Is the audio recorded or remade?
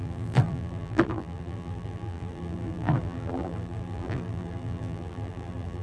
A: remade